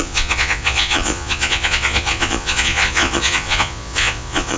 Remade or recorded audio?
remade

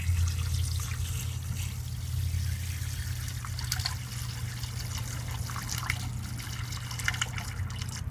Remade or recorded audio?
recorded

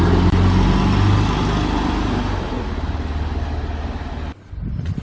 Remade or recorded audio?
recorded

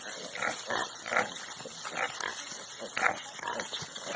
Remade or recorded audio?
recorded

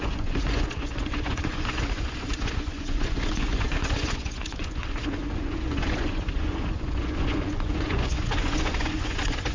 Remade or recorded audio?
remade